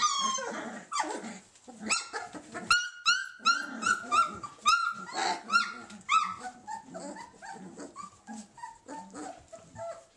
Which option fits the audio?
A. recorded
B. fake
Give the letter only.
A